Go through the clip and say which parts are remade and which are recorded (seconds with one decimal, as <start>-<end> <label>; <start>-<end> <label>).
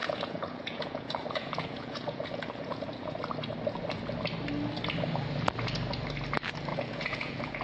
0.0-3.2 remade; 3.2-6.7 recorded; 6.7-7.6 remade